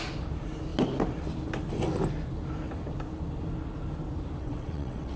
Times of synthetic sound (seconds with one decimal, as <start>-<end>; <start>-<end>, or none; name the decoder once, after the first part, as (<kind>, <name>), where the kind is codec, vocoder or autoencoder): 4.4-5.2 (vocoder, WaveNeXt)